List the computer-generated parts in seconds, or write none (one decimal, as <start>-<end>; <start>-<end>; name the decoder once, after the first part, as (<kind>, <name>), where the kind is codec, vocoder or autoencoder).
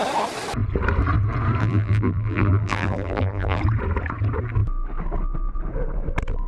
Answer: 1.6-3.6 (vocoder, BigVGAN v2)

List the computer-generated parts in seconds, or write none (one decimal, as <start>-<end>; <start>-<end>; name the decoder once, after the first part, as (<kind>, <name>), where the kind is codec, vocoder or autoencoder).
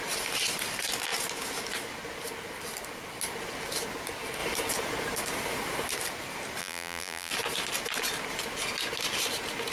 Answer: 6.6-7.3 (vocoder, BigVGAN v2)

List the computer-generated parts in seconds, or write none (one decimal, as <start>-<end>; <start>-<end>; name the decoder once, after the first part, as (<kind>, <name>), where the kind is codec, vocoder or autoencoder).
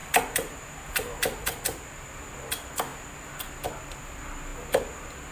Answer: 0.0-1.6 (vocoder, BigVGAN v2)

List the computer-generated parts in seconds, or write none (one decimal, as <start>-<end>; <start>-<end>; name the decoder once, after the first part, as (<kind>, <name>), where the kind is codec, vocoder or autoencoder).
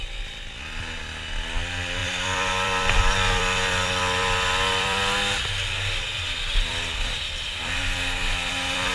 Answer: 2.0-5.5 (vocoder, BigVGAN v2); 6.7-8.9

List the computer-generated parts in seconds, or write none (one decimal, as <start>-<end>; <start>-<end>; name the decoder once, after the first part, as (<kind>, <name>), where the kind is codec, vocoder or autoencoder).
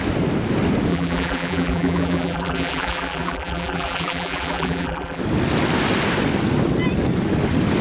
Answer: 0.9-5.2 (vocoder, BigVGAN v2)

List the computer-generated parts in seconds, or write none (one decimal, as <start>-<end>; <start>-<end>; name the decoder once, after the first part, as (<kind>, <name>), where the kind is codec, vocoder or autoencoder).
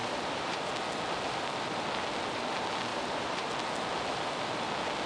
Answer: 0.0-0.7 (vocoder, BigVGAN v2); 2.9-3.5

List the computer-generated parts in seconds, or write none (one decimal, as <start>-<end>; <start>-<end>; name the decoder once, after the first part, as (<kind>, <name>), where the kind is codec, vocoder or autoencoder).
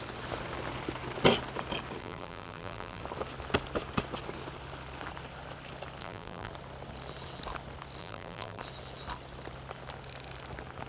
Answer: 2.0-3.0 (vocoder, BigVGAN v2); 6.0-6.5; 8.0-8.6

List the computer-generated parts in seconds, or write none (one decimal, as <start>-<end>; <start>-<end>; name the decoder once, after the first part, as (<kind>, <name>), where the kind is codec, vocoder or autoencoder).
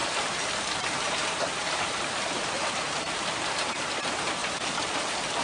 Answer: 0.0-3.2 (vocoder, BigVGAN v2); 4.4-5.4